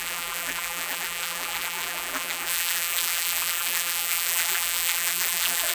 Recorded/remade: remade